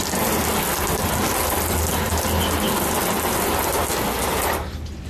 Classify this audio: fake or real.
real